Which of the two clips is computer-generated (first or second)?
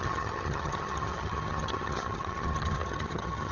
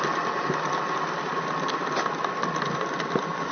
first